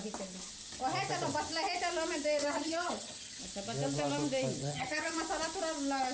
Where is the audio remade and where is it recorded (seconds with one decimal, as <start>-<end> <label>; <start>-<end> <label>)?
0.0-2.4 recorded; 2.4-3.4 remade; 3.4-4.6 recorded; 4.6-5.2 remade; 5.2-6.1 recorded